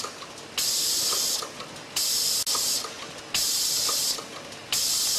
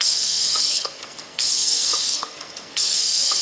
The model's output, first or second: second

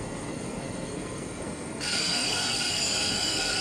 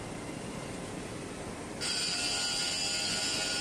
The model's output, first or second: first